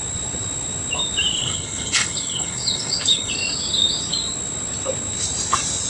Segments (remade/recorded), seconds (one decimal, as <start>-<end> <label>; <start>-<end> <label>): 0.0-1.4 recorded; 1.4-3.3 remade; 3.3-5.9 recorded